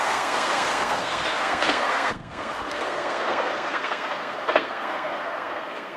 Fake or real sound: fake